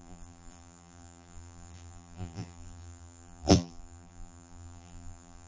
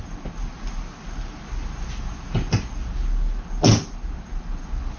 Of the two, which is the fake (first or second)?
first